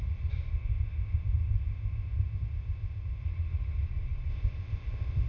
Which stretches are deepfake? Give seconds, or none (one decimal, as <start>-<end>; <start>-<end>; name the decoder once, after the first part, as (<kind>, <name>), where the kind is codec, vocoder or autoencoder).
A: 0.5-3.2 (codec, ZipCodec); 4.3-5.3